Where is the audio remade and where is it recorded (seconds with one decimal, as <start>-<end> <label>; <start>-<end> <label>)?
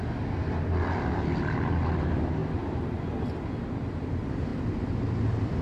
0.0-4.5 recorded; 4.5-5.6 remade